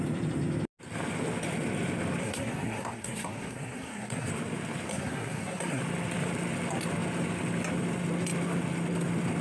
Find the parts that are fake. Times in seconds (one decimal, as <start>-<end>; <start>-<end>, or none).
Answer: 2.2-4.3; 4.9-5.8

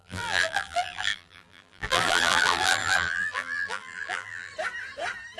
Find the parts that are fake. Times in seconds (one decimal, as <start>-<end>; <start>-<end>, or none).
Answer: 0.0-4.5

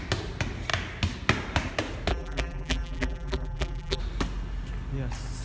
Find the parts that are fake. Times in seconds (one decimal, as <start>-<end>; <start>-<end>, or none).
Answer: 2.1-4.0

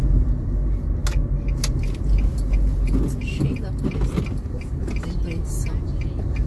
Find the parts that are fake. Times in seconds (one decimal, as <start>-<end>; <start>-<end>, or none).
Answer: none

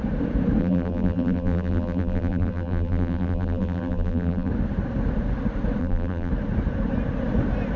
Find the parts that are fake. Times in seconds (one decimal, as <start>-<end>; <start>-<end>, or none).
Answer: 0.6-4.5; 5.8-6.3

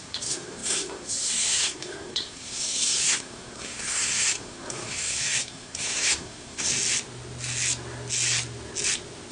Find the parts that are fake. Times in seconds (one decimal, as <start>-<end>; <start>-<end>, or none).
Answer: 0.0-6.7

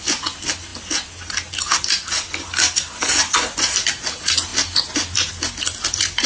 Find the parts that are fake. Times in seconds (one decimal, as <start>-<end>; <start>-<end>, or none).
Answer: none

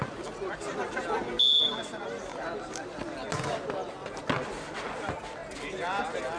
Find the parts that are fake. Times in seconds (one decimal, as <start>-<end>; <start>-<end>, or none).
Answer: none